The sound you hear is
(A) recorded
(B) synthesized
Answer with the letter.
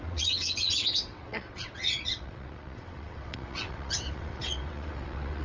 B